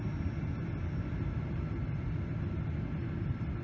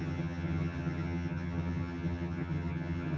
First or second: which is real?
first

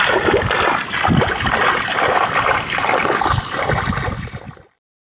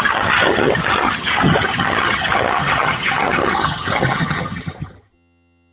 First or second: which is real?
first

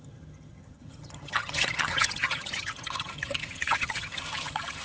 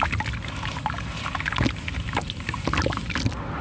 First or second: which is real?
second